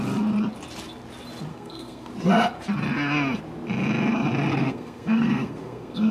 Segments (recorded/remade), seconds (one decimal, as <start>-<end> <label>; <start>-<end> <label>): 0.0-1.5 recorded; 1.5-2.1 remade; 2.1-4.5 recorded; 4.5-6.1 remade